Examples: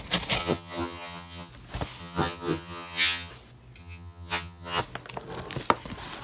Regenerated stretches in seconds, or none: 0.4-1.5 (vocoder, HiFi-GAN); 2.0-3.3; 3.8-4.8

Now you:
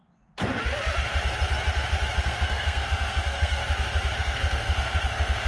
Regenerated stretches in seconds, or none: 2.2-3.6 (codec, SNAC); 4.2-5.5

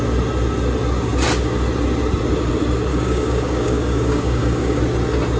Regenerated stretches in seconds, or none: 2.9-4.8 (codec, DAC)

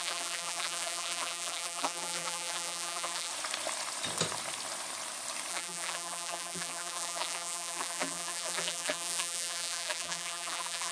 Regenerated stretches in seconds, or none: 0.0-3.3 (vocoder, BigVGAN v2); 5.5-10.9

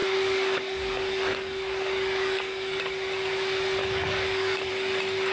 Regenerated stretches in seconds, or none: 0.0-2.8 (codec, DAC); 3.8-4.7